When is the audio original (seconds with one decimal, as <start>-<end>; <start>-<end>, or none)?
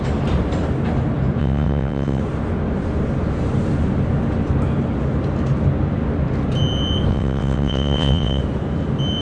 0.0-1.4; 2.2-7.1; 8.4-9.2